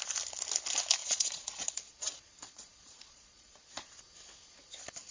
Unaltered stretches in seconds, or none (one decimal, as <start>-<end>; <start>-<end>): 0.0-1.0; 4.0-5.1